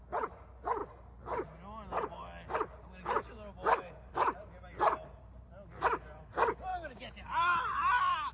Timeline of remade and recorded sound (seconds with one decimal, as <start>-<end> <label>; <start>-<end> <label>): 0.0-8.3 recorded

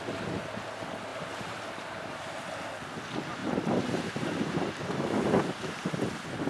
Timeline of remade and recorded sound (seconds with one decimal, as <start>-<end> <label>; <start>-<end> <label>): 0.0-1.1 recorded; 1.1-2.5 remade; 2.5-3.4 recorded; 3.4-6.5 remade

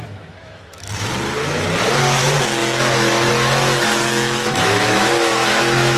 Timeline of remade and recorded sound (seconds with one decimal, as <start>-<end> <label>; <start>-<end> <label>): 0.0-1.1 remade; 1.1-2.2 recorded; 2.2-6.0 remade

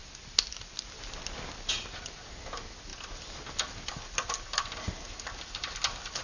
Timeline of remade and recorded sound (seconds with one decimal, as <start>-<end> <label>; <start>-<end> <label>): 0.0-6.2 recorded

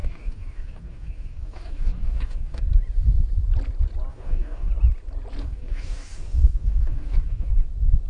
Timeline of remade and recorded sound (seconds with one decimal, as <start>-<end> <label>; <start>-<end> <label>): 0.0-2.6 remade; 2.6-4.1 recorded; 4.1-4.7 remade; 4.7-5.4 recorded; 5.4-7.5 remade; 7.5-8.1 recorded